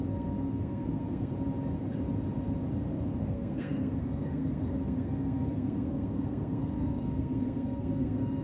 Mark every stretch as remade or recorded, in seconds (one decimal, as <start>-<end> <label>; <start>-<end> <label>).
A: 0.0-1.3 remade; 1.3-3.2 recorded; 3.2-8.4 remade